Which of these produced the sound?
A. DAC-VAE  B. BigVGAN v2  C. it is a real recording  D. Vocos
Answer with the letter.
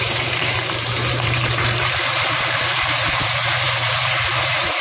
B